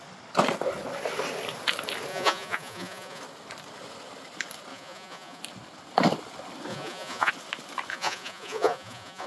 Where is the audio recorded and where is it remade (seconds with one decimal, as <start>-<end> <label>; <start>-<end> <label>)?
0.0-2.1 recorded; 2.1-3.2 remade; 3.2-4.7 recorded; 4.7-5.4 remade; 5.4-6.7 recorded; 6.7-7.3 remade; 7.3-7.9 recorded; 7.9-9.3 remade